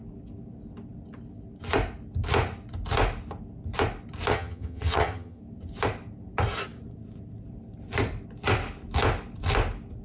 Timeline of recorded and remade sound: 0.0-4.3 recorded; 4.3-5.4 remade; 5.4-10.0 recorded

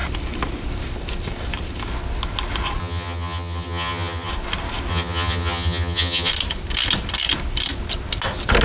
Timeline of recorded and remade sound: 0.0-2.8 recorded; 2.8-4.3 remade; 4.3-4.9 recorded; 4.9-6.3 remade; 6.3-8.6 recorded

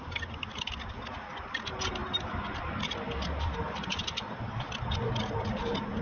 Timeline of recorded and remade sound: 0.0-6.0 recorded

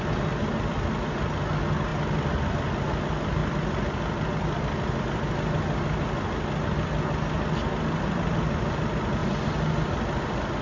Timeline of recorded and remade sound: 0.0-10.6 recorded

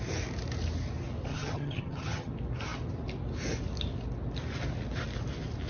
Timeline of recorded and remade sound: 0.0-1.3 recorded; 1.3-2.3 remade; 2.3-5.7 recorded

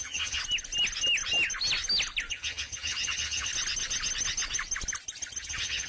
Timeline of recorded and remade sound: 0.0-0.4 remade; 0.4-2.3 recorded; 2.3-3.5 remade; 3.5-5.4 recorded; 5.4-5.9 remade

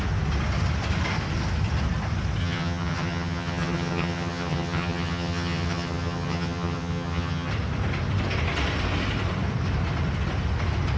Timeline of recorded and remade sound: 0.0-2.4 recorded; 2.4-7.5 remade; 7.5-11.0 recorded

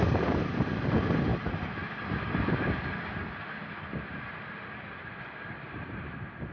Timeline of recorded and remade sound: 0.0-6.5 recorded